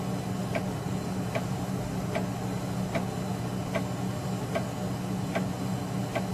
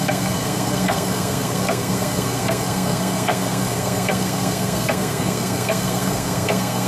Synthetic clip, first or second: second